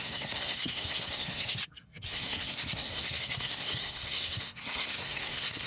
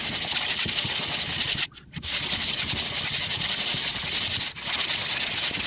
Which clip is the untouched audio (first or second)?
second